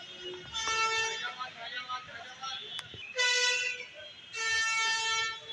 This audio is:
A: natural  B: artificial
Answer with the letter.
A